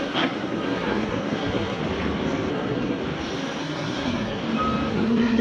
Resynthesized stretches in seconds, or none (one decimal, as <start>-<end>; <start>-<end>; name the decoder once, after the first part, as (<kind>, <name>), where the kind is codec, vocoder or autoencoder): 0.0-1.8 (codec, SNAC); 2.5-3.0; 3.6-4.4; 4.9-5.4